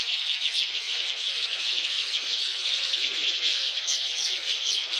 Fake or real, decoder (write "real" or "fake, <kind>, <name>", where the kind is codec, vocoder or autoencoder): fake, codec, SNAC